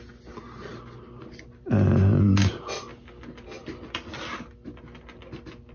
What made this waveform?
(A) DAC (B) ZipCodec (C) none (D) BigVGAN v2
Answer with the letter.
C